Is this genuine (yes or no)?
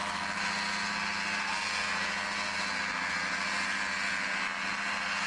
yes